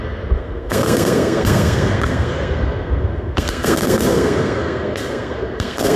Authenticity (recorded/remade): remade